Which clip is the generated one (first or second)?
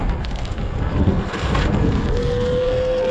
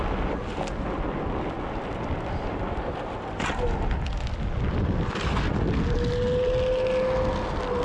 first